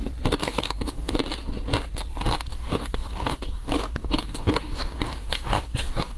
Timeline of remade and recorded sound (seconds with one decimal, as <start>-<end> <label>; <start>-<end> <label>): 0.0-0.4 recorded; 0.4-1.1 remade; 1.1-2.5 recorded; 2.5-6.2 remade